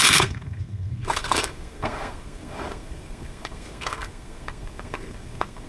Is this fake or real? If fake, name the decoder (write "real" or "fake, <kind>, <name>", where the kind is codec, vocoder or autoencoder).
fake, codec, SNAC